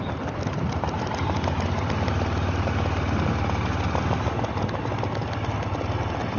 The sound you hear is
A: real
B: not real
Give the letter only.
A